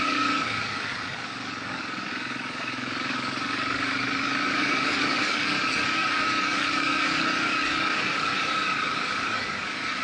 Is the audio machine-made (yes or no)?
yes